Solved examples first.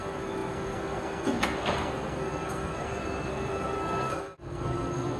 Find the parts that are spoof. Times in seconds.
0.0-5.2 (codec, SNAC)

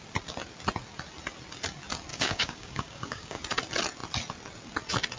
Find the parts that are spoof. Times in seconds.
2.1-3.4 (codec, DAC)

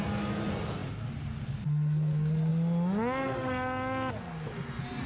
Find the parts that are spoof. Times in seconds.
none

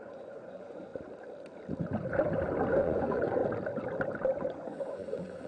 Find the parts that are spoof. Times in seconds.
0.0-0.9 (vocoder, Vocos); 2.8-3.4; 4.5-5.5

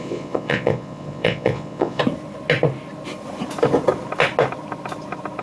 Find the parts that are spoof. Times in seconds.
0.0-2.0 (vocoder, Vocos)

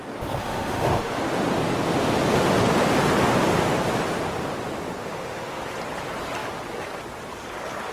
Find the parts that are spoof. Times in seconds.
0.4-1.2 (autoencoder, DAC-VAE); 5.0-5.6

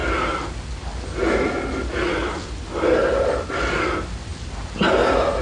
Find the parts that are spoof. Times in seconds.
none

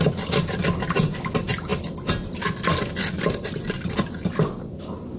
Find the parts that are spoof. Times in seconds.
none